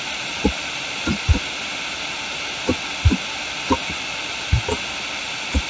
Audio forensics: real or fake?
real